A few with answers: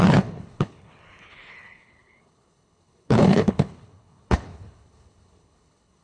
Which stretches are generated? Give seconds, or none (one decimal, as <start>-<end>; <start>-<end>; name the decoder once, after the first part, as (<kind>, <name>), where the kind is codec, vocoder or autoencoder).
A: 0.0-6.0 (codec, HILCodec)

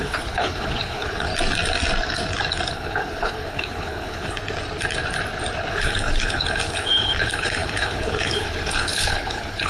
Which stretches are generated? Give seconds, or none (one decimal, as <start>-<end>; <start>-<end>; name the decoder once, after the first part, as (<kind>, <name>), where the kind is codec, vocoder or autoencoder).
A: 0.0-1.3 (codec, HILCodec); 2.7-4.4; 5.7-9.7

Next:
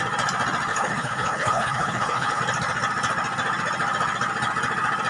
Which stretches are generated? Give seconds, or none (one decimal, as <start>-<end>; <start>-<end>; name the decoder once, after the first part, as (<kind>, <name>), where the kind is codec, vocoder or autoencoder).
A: 0.7-2.4 (codec, HILCodec)

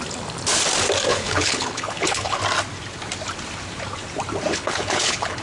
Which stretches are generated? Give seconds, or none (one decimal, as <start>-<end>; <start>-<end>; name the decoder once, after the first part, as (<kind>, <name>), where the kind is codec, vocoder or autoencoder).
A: 1.1-2.4 (codec, HILCodec); 4.5-5.4